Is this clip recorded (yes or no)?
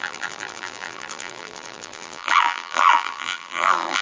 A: no